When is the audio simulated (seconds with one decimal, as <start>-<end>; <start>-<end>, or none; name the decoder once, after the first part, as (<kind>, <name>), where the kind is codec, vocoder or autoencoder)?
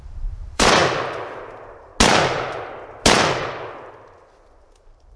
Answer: 0.0-0.8 (vocoder, BigVGAN v2); 1.3-1.9; 4.6-5.2